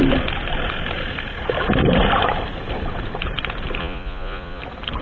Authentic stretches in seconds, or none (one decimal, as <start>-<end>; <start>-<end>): 0.0-3.8; 4.6-5.0